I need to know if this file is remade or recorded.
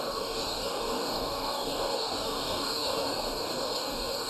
remade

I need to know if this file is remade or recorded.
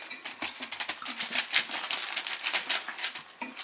recorded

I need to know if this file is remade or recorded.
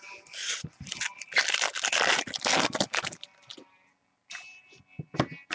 recorded